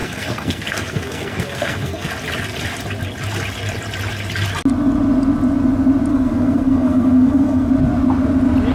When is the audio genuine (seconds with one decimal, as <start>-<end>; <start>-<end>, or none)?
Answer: 2.1-6.1; 7.7-8.7